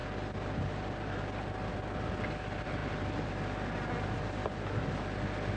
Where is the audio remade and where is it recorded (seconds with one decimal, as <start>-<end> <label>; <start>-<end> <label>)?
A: 0.0-5.6 recorded